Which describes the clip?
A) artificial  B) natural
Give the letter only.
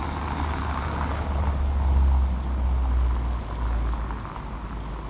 B